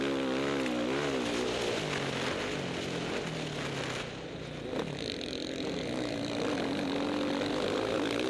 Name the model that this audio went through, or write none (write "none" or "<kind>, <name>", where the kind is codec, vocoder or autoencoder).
none